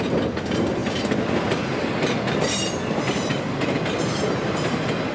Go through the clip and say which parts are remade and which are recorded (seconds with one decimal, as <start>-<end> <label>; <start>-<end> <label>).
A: 0.0-5.1 recorded